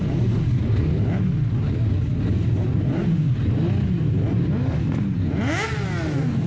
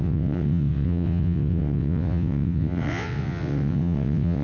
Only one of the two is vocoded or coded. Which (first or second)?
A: second